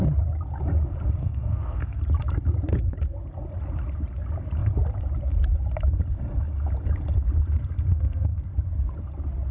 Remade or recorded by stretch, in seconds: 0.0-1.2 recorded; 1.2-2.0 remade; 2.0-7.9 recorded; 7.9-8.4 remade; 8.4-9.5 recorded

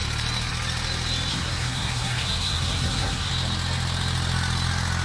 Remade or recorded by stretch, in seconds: 0.0-1.3 recorded; 1.3-3.3 remade; 3.3-5.0 recorded

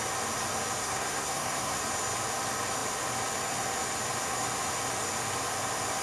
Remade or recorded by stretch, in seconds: 0.0-0.8 recorded; 0.8-1.8 remade; 1.8-6.0 recorded

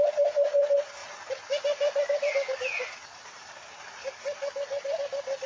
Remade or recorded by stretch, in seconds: 0.0-5.5 recorded

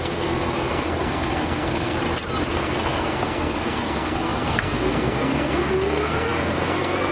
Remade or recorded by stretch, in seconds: 0.0-2.0 remade; 2.0-2.5 recorded; 2.5-7.1 remade

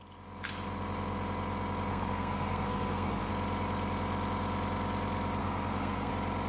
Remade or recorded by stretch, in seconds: 0.0-1.9 recorded; 1.9-3.3 remade; 3.3-5.4 recorded; 5.4-6.1 remade; 6.1-6.5 recorded

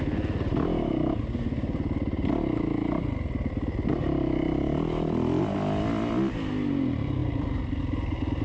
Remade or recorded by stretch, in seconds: 0.0-8.4 recorded